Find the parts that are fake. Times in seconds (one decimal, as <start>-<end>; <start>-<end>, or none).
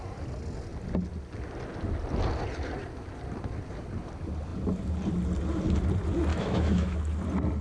6.3-7.0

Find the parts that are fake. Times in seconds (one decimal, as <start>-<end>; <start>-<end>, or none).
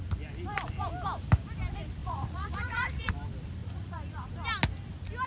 2.0-3.1; 3.6-4.3